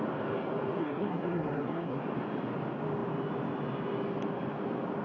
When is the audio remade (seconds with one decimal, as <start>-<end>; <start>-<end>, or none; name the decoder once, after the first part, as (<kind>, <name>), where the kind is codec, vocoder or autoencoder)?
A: 0.8-2.0 (codec, SNAC)